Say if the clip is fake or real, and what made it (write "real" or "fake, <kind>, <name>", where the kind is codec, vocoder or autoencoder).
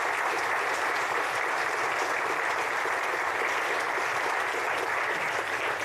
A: real